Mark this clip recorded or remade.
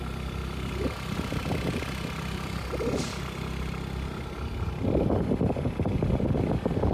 recorded